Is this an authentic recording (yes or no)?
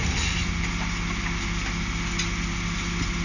yes